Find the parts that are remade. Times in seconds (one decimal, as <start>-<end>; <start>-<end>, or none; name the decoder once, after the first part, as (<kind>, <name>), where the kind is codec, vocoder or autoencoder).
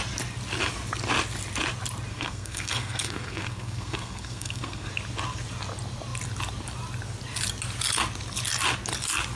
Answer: 2.1-4.9 (codec, SNAC)